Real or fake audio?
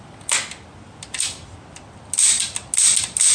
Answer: real